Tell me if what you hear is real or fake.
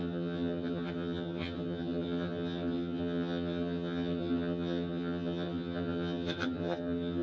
fake